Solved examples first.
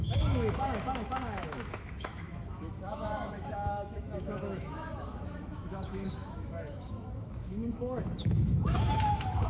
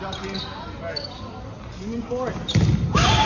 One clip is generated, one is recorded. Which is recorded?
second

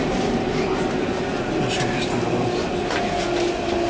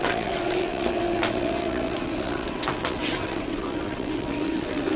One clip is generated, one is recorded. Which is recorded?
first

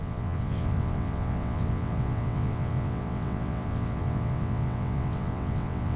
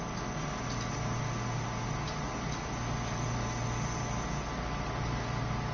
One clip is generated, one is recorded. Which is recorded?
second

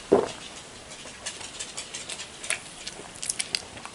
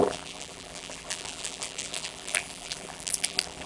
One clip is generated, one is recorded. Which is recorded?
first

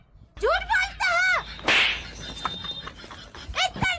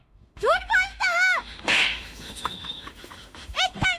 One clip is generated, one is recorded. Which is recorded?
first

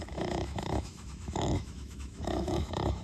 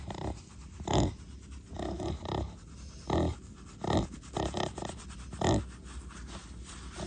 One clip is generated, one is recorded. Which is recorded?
second